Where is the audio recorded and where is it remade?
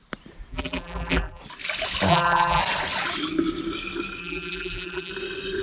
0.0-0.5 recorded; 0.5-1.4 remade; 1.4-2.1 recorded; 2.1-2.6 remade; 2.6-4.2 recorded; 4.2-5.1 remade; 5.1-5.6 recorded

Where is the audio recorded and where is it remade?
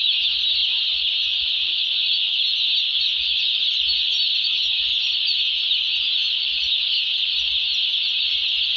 0.0-6.2 recorded; 6.2-7.4 remade; 7.4-8.8 recorded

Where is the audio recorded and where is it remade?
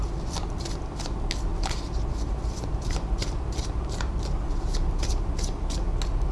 0.0-6.3 recorded